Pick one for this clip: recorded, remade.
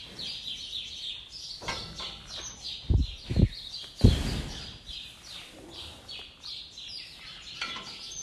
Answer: recorded